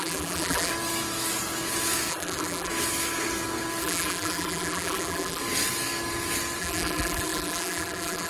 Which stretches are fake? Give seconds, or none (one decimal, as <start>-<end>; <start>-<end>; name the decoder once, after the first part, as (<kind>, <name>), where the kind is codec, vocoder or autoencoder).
0.0-0.7 (vocoder, BigVGAN v2); 2.1-2.7; 3.8-5.4; 6.6-8.3